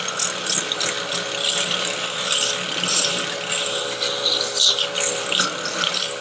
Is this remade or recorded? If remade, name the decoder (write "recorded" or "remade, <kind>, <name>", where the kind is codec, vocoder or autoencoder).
recorded